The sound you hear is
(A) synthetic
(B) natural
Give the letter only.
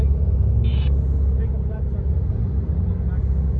B